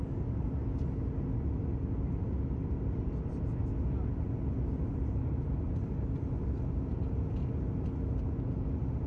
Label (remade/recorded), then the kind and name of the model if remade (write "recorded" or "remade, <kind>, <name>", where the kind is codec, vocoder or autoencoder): recorded